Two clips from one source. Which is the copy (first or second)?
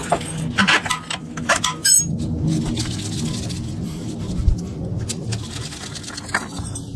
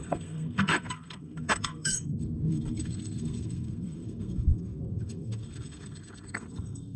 second